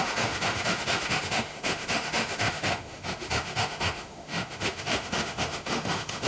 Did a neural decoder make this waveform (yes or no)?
yes